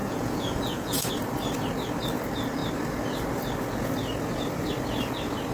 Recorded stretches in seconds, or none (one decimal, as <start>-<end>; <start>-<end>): 1.1-5.5